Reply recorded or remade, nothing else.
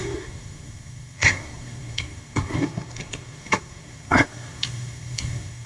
remade